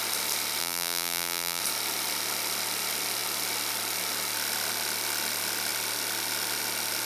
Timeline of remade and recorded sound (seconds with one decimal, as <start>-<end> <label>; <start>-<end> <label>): 0.0-0.6 recorded; 0.6-1.6 remade; 1.6-7.1 recorded